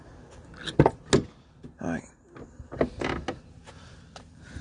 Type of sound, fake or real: real